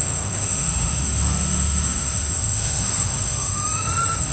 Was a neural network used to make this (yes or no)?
yes